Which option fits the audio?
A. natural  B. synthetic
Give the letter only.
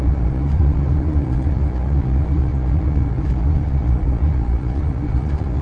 B